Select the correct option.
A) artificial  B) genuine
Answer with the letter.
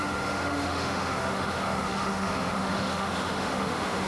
A